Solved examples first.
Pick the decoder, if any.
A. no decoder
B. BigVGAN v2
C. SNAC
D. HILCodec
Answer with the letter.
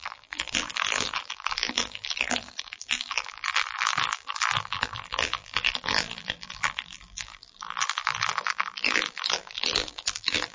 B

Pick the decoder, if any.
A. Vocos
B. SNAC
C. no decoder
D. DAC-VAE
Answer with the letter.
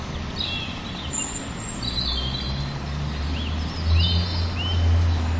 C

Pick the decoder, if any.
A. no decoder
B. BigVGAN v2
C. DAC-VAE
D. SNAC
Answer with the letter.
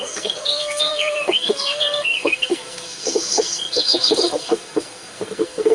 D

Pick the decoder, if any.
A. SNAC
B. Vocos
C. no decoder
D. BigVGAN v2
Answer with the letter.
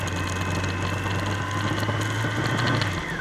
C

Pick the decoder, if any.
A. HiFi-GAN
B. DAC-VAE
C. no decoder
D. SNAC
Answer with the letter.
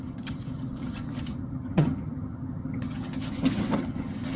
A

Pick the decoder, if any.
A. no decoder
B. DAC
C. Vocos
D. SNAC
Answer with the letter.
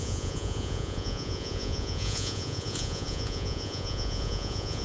C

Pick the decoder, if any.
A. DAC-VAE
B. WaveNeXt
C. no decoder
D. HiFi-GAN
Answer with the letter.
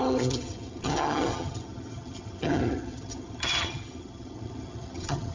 D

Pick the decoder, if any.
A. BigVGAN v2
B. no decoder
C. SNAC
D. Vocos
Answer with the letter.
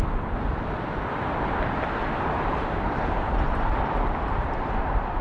B